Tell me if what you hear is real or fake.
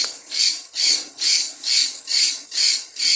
fake